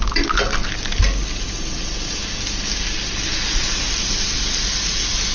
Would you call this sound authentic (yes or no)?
yes